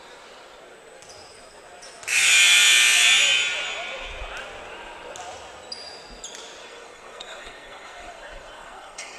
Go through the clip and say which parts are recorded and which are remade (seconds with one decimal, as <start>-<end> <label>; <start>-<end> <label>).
0.0-6.6 recorded; 6.6-9.2 remade